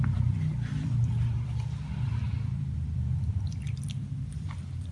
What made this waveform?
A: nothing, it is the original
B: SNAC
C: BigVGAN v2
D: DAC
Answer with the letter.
C